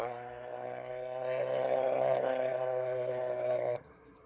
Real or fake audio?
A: fake